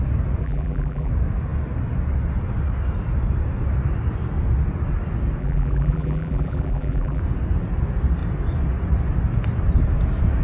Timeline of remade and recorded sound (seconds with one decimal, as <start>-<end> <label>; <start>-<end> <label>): 0.0-0.4 recorded; 0.4-1.1 remade; 1.1-5.4 recorded; 5.4-7.2 remade; 7.2-10.4 recorded